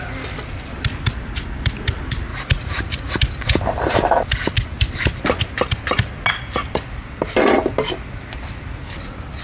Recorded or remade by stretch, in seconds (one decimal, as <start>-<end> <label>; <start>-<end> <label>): 0.0-2.3 recorded; 2.3-3.1 remade; 3.1-9.4 recorded